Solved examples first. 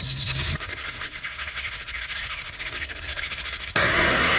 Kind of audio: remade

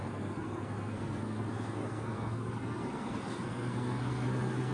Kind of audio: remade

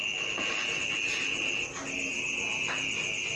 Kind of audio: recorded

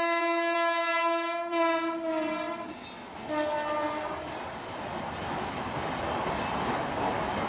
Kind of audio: recorded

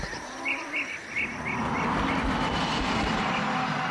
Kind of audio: recorded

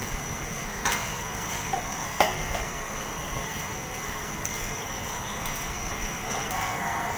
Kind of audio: remade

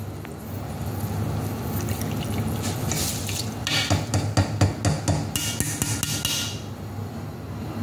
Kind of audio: recorded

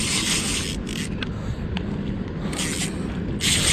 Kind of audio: recorded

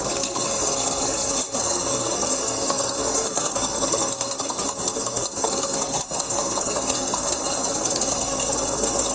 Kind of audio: remade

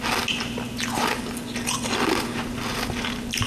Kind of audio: recorded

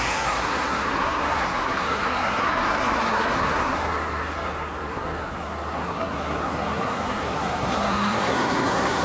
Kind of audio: remade